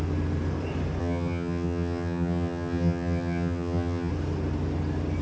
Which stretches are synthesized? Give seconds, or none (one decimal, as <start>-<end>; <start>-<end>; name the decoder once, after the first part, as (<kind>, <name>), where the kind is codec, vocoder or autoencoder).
1.0-4.1 (vocoder, HiFi-GAN)